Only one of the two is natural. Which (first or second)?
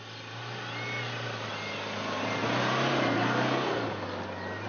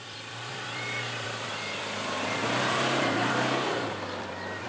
first